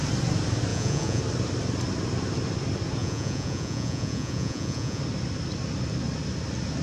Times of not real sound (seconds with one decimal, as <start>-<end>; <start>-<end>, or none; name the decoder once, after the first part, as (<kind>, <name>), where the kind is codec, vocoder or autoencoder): 0.7-1.2 (vocoder, Vocos); 3.0-5.0